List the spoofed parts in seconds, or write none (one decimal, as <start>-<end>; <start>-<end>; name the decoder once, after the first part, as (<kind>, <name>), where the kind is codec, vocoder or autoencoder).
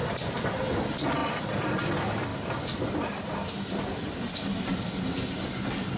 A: 0.0-0.5 (vocoder, BigVGAN v2); 2.3-4.2